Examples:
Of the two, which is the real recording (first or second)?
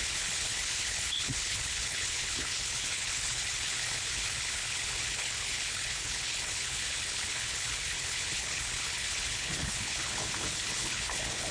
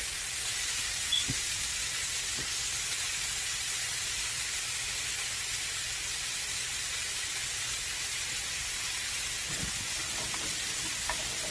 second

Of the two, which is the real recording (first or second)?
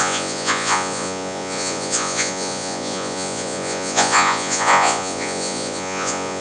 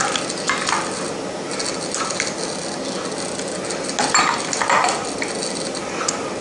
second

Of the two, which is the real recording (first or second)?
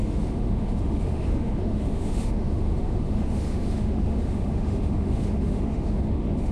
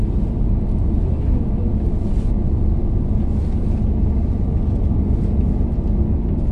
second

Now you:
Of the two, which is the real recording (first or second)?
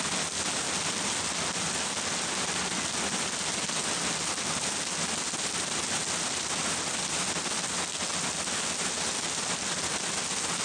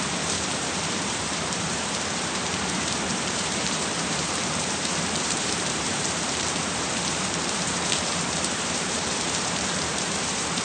first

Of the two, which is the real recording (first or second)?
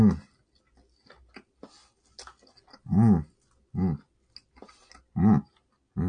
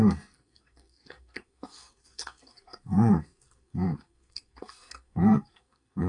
first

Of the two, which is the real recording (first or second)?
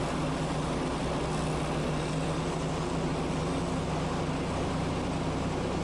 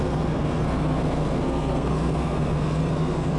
first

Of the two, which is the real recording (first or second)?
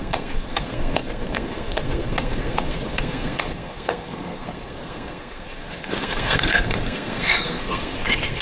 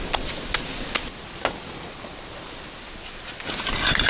second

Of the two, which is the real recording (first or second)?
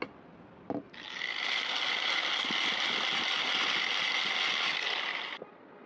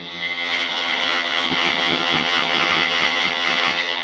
first